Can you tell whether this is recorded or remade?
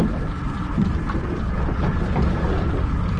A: recorded